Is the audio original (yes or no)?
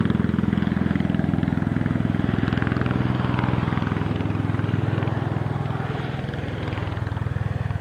yes